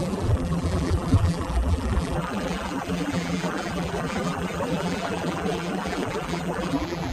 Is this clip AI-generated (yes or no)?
yes